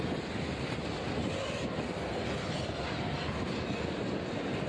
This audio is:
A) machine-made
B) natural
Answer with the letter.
B